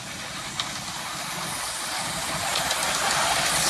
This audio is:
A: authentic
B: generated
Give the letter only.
A